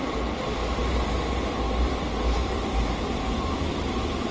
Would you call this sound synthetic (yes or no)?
no